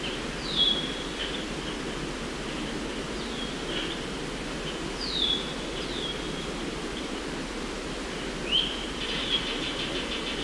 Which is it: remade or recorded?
recorded